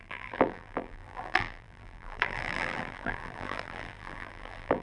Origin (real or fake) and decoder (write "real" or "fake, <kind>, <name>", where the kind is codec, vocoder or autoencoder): fake, vocoder, BigVGAN v2